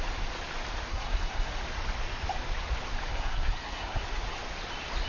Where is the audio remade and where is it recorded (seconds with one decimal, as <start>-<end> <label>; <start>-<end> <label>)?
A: 0.0-0.9 recorded; 0.9-1.5 remade; 1.5-3.1 recorded; 3.1-4.0 remade; 4.0-5.1 recorded